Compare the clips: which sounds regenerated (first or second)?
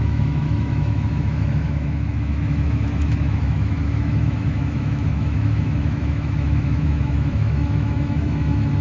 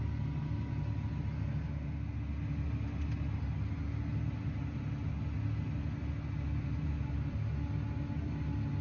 first